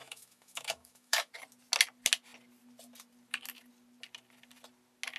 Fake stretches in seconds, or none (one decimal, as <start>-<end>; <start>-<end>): 0.0-1.3